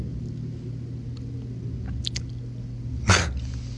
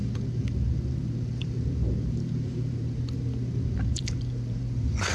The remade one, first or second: second